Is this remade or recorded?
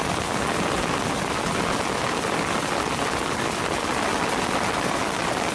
recorded